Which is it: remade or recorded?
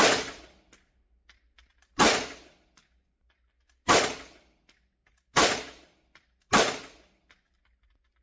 recorded